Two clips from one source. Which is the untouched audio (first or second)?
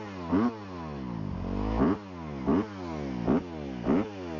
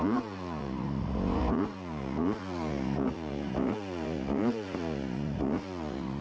first